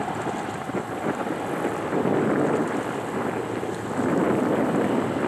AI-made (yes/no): no